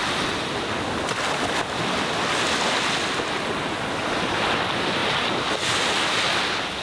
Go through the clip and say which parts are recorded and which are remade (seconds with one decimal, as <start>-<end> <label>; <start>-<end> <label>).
0.0-6.8 recorded